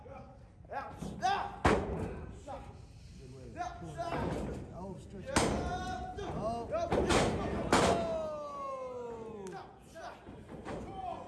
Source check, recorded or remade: recorded